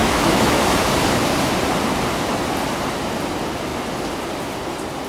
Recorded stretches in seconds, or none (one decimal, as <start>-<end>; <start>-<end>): 0.6-5.1